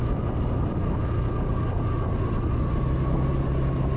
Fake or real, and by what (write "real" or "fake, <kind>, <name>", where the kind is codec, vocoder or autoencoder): real